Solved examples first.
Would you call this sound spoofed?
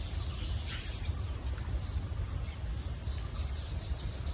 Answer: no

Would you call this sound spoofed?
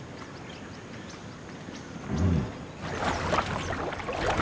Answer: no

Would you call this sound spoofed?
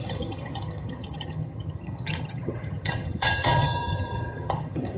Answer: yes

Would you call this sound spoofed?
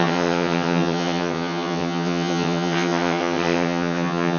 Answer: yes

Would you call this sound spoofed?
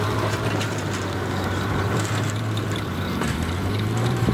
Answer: yes